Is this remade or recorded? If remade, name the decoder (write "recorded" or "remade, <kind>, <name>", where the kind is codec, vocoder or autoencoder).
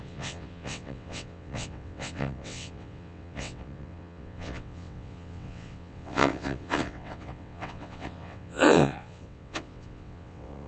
remade, vocoder, WaveNeXt